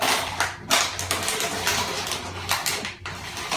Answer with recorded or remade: recorded